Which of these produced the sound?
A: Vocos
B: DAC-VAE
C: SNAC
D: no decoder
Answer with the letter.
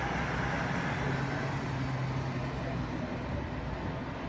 D